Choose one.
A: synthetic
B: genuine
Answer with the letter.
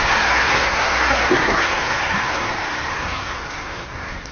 A